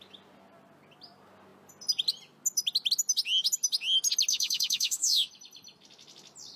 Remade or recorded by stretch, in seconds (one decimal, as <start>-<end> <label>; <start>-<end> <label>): 0.0-4.3 recorded; 4.3-5.3 remade; 5.3-6.6 recorded